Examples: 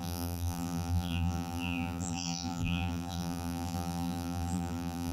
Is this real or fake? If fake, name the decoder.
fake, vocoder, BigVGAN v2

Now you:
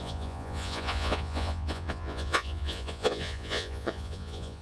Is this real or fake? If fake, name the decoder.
fake, vocoder, Vocos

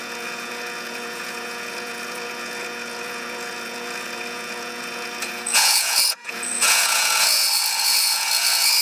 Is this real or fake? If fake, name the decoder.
fake, vocoder, Vocos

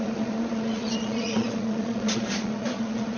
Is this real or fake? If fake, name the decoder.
fake, vocoder, Vocos